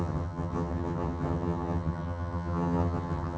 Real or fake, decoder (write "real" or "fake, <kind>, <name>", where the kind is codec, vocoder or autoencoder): fake, vocoder, HiFi-GAN